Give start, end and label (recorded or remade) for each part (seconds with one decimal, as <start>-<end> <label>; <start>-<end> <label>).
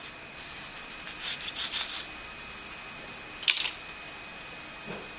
0.0-3.1 remade; 3.1-5.2 recorded